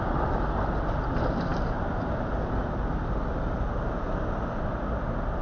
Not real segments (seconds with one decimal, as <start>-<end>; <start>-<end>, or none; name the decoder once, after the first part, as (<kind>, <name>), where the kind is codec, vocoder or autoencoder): none